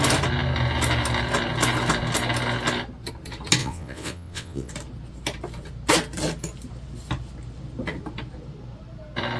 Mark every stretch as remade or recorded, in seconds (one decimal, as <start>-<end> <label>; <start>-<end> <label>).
0.0-3.6 recorded; 3.6-4.7 remade; 4.7-9.4 recorded